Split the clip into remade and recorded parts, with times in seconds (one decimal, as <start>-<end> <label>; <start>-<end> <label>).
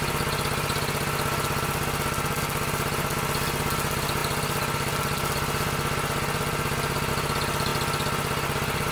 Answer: 0.0-8.9 recorded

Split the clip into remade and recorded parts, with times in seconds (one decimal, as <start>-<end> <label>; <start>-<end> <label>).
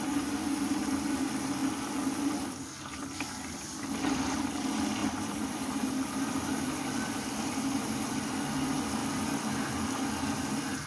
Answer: 0.0-5.0 recorded; 5.0-8.1 remade; 8.1-9.0 recorded; 9.0-9.7 remade; 9.7-10.9 recorded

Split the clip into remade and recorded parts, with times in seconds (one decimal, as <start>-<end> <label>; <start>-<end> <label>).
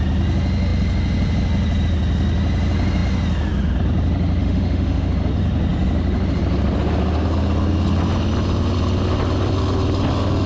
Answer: 0.0-4.4 recorded; 4.4-5.1 remade; 5.1-10.5 recorded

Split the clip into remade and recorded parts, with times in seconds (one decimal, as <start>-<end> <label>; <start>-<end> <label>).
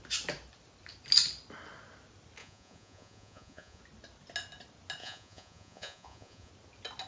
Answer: 0.0-2.4 recorded; 2.4-3.8 remade; 3.8-5.0 recorded; 5.0-6.5 remade; 6.5-7.1 recorded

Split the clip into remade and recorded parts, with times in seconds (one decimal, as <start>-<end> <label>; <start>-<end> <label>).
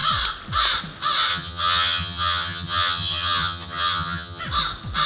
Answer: 0.0-1.3 recorded; 1.3-4.4 remade; 4.4-5.1 recorded